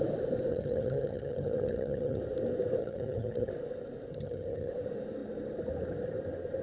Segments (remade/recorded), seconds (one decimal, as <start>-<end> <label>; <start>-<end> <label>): 0.0-0.5 recorded; 0.5-2.2 remade; 2.2-2.8 recorded; 2.8-3.5 remade; 3.5-4.1 recorded; 4.1-4.7 remade; 4.7-6.6 recorded